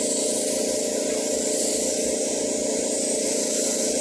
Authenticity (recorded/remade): recorded